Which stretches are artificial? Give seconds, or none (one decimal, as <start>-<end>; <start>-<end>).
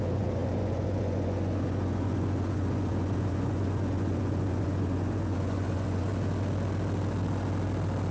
0.0-6.1